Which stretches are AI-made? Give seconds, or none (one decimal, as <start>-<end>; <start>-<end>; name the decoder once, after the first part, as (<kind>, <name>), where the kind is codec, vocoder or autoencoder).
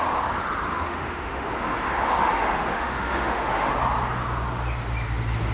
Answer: 0.7-3.7 (autoencoder, DAC-VAE)